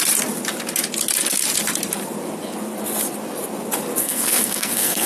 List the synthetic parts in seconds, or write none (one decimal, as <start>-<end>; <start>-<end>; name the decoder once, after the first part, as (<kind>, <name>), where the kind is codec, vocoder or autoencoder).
4.0-5.1 (codec, SNAC)